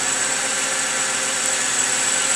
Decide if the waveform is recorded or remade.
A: recorded